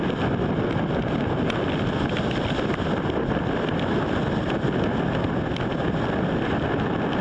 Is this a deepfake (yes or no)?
no